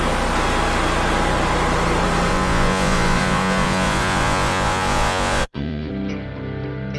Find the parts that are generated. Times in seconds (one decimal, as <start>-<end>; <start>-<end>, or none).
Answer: 2.3-5.9